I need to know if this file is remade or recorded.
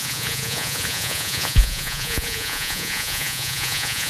remade